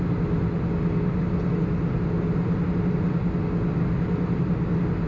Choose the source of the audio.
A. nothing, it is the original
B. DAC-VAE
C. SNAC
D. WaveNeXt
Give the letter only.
A